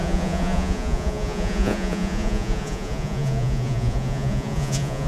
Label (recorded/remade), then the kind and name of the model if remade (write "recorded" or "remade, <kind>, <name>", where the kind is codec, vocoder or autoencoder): remade, vocoder, Vocos